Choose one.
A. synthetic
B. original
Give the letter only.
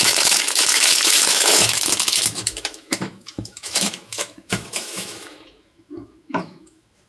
A